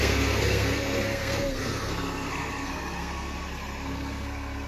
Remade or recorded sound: remade